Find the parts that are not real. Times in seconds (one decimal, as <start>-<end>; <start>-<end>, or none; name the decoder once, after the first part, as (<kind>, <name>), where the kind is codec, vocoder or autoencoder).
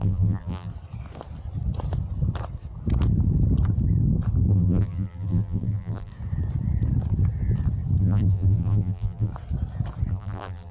0.0-0.7 (vocoder, BigVGAN v2); 4.5-6.1; 8.0-9.3; 10.1-10.7